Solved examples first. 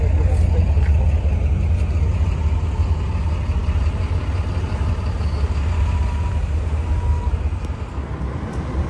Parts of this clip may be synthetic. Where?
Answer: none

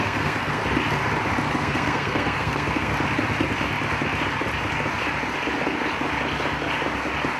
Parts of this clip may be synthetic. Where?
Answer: 0.0-0.6 (codec, SNAC); 1.5-2.9

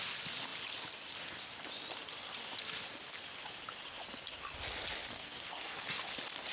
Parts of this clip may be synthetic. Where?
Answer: 5.1-5.8 (codec, SNAC)

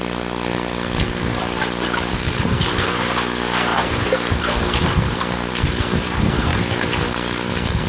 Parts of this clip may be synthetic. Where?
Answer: 0.0-1.4 (codec, SNAC); 2.1-7.9

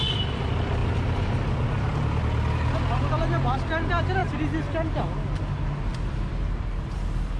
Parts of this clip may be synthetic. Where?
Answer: none

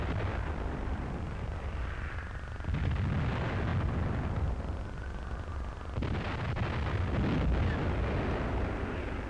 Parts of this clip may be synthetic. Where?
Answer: none

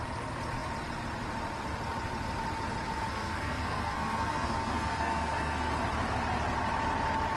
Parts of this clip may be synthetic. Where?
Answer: 3.1-5.7 (codec, SNAC)